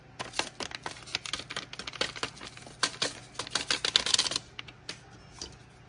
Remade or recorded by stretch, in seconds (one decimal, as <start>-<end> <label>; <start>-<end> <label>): 0.0-5.9 recorded